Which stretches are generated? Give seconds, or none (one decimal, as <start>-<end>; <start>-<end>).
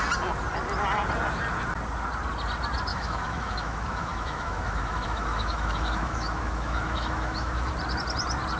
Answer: 2.9-7.7